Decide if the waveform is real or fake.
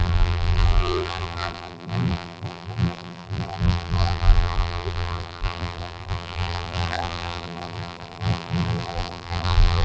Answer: fake